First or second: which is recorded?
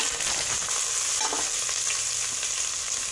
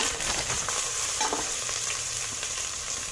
first